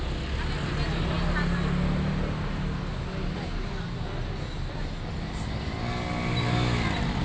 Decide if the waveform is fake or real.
real